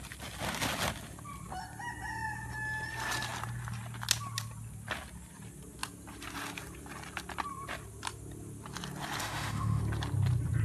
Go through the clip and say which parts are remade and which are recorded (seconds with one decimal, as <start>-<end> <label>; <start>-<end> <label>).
0.0-9.2 recorded; 9.2-9.8 remade; 9.8-10.6 recorded